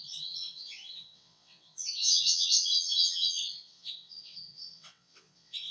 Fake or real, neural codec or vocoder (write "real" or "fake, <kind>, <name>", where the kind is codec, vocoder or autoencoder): fake, vocoder, WaveNeXt